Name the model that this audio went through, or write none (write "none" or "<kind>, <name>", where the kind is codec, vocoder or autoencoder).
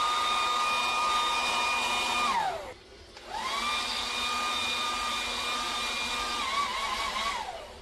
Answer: none